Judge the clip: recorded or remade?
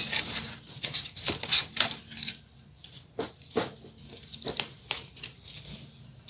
recorded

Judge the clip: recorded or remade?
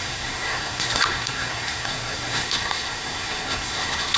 remade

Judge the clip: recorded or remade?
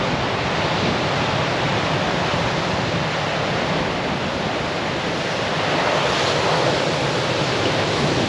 recorded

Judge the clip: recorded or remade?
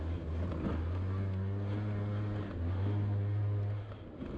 recorded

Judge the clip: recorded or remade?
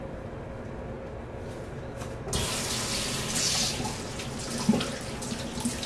recorded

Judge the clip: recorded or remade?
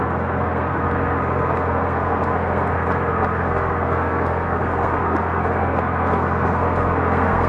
remade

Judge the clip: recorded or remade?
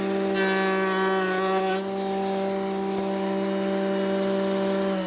recorded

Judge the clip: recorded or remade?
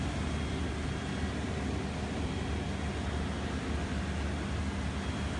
recorded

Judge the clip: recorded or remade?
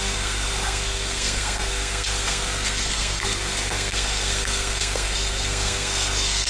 remade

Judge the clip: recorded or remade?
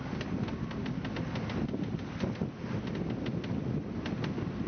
recorded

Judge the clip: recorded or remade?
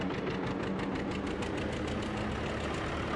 recorded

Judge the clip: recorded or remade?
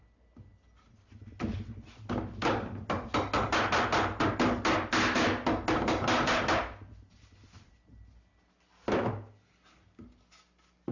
recorded